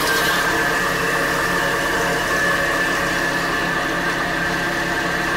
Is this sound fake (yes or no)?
no